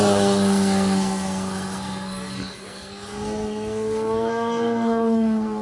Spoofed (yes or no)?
yes